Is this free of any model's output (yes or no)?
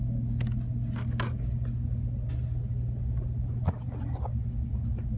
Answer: yes